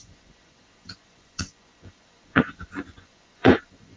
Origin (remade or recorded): remade